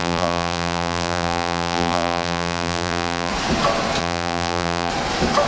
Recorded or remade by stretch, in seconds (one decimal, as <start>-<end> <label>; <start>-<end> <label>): 0.0-3.3 remade; 3.3-4.0 recorded; 4.0-4.9 remade; 4.9-5.5 recorded